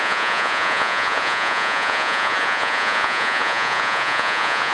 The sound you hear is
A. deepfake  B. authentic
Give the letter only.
A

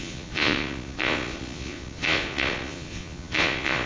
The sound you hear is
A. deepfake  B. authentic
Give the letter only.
A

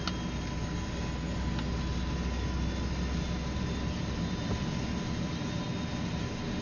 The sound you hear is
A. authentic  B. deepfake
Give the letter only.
A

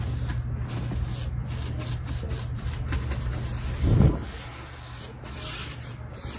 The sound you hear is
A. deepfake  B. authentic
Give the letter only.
B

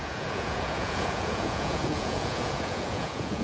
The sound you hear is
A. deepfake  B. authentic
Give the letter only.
A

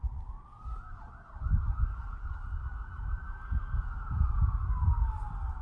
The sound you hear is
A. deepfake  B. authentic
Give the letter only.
B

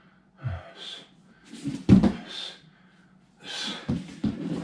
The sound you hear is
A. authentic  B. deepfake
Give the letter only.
A